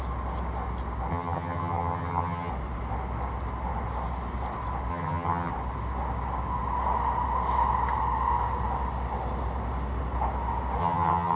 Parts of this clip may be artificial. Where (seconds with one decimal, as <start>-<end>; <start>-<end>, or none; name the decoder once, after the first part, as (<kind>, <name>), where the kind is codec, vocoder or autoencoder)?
1.1-2.5 (vocoder, HiFi-GAN); 4.9-5.5; 10.8-11.4